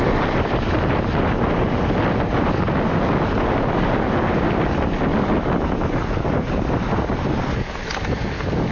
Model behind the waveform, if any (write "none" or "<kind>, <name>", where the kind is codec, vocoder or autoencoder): none